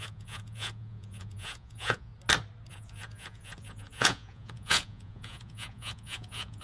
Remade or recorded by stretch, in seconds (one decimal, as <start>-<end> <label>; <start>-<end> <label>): 0.0-2.1 remade; 2.1-2.7 recorded; 2.7-6.6 remade